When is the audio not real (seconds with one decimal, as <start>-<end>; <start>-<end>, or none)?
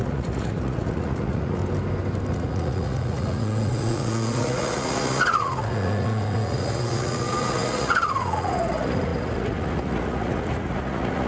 0.0-1.6; 2.3-11.3